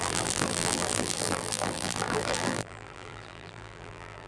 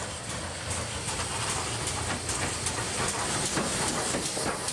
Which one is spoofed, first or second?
first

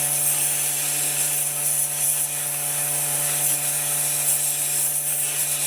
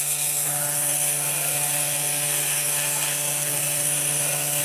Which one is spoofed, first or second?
second